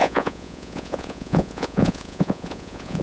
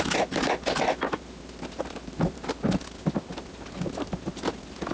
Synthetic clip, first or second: first